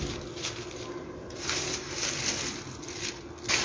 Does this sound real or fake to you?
real